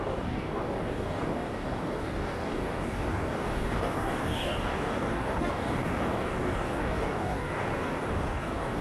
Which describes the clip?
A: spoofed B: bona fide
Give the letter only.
A